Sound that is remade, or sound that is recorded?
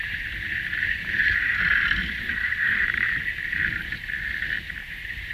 recorded